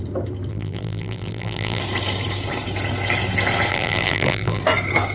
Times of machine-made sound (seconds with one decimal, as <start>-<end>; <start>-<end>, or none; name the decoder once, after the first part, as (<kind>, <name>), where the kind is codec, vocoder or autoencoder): 0.5-1.8 (vocoder, BigVGAN v2); 3.7-4.6